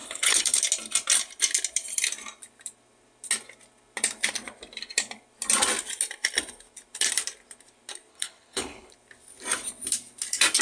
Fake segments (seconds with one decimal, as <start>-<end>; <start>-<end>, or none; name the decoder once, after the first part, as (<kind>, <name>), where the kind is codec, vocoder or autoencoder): 0.0-0.6 (codec, HILCodec); 8.1-8.9

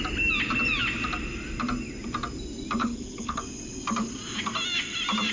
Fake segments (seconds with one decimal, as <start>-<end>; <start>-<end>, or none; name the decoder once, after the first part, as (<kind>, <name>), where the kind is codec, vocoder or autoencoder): 2.8-3.4 (codec, HILCodec)

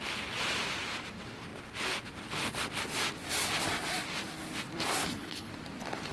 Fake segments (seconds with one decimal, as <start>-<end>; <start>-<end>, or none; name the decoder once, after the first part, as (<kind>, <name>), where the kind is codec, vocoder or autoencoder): 5.0-5.5 (codec, HILCodec)

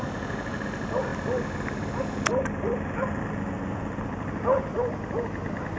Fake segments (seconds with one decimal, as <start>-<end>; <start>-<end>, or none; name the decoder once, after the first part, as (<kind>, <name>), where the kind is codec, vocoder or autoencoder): none

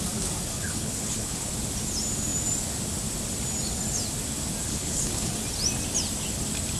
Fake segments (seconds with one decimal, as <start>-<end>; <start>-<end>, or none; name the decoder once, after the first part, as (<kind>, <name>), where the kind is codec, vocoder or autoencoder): 0.5-1.5 (codec, HILCodec); 4.6-5.3

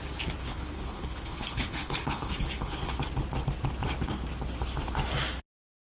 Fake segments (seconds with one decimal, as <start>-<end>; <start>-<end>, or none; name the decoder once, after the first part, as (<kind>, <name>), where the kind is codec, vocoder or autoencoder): 0.4-3.0 (codec, HILCodec)